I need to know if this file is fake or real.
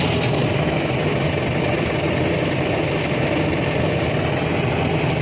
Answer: real